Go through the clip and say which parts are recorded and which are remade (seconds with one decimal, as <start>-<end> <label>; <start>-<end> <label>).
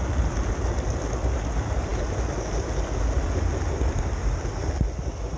0.0-5.4 recorded